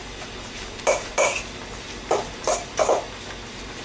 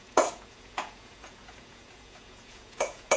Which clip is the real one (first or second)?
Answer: first